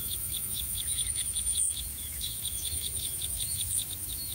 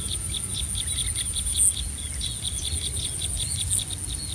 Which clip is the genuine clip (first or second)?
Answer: second